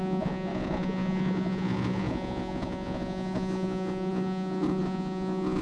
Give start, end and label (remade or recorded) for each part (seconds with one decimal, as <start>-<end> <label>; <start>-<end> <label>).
0.0-5.6 remade